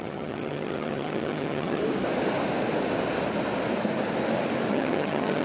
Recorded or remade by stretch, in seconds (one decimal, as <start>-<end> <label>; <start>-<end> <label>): 0.0-1.8 remade; 1.8-4.7 recorded; 4.7-5.4 remade